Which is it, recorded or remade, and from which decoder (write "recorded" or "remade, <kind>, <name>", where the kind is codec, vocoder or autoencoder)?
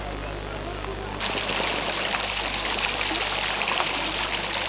recorded